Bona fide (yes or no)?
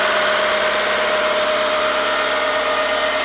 yes